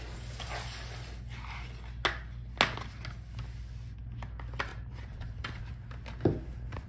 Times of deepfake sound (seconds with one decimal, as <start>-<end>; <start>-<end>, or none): 4.7-5.7